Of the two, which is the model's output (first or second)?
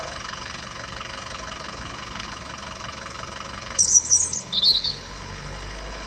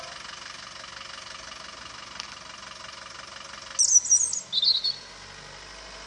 first